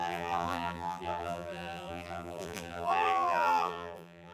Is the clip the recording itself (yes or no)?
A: no